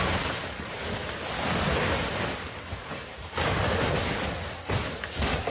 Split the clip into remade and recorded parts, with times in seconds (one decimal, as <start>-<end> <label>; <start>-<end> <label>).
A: 0.0-5.5 recorded